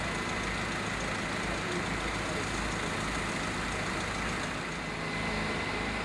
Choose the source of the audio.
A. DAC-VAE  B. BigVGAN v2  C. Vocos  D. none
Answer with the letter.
D